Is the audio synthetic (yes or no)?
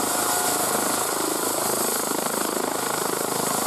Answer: no